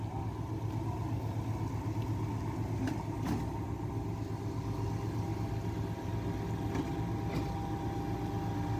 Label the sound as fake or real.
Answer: real